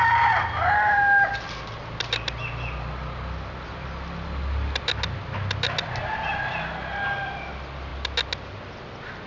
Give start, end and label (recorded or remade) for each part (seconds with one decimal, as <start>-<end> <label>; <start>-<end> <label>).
0.0-9.3 recorded